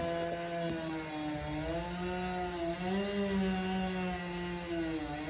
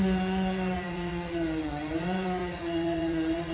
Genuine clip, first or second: first